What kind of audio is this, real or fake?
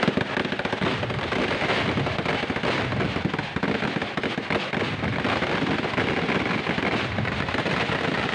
real